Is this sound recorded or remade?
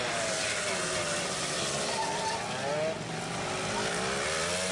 recorded